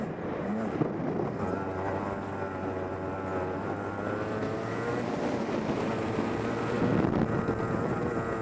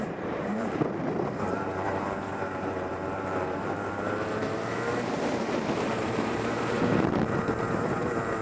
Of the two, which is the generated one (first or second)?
second